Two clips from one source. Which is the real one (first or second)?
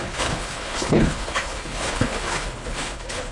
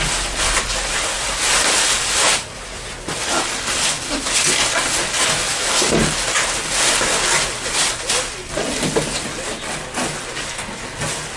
second